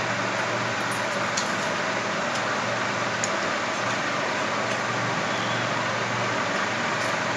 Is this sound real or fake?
real